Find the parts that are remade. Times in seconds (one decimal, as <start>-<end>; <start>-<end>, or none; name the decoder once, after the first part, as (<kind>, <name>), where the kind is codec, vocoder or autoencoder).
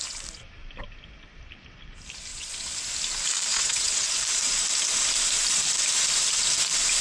2.3-2.8 (vocoder, WaveNeXt); 3.5-4.2